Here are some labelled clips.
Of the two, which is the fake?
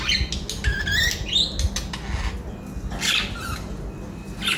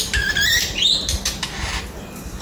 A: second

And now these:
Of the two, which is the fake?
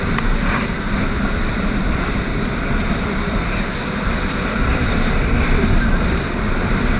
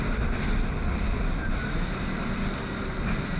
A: first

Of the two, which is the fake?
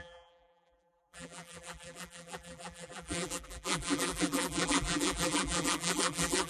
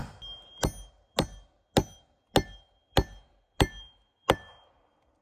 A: first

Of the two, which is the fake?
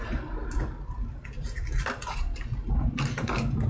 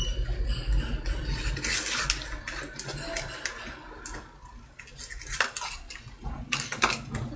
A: first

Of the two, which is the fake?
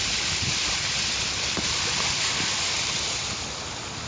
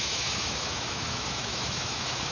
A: second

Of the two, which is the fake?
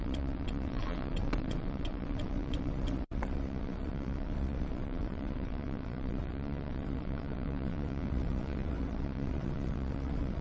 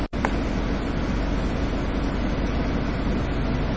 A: first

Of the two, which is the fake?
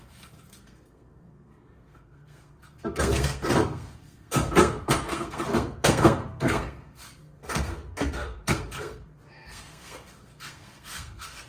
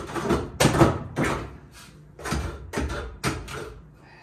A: first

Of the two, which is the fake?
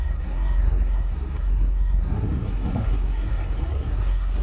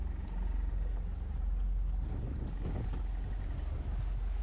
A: first